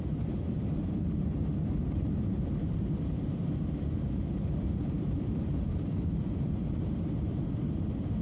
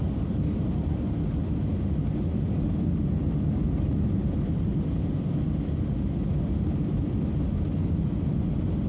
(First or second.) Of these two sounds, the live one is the second